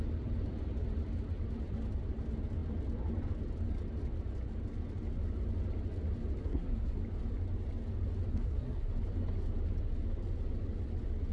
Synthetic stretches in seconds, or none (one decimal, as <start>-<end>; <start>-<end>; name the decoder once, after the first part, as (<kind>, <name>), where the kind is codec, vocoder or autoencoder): 6.4-7.0 (codec, SNAC); 8.3-8.9